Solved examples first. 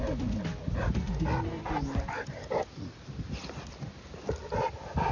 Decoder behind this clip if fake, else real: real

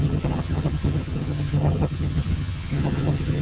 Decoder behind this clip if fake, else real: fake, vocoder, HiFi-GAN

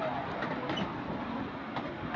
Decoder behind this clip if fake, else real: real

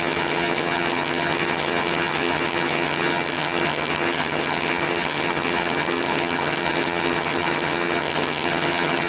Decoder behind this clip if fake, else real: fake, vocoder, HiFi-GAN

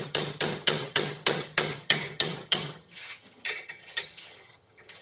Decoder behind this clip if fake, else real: fake, vocoder, HiFi-GAN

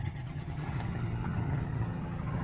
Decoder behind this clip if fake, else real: fake, vocoder, HiFi-GAN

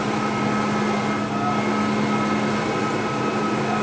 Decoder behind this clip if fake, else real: real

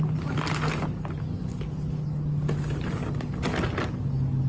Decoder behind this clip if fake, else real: real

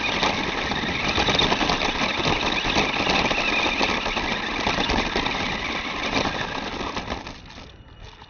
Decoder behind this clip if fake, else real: real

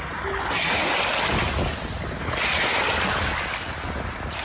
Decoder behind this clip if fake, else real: real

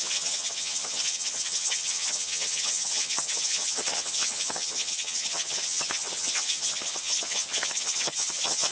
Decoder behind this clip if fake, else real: fake, vocoder, HiFi-GAN